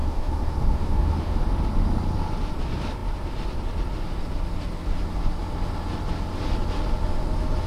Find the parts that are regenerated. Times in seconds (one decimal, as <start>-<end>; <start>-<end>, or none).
0.0-1.4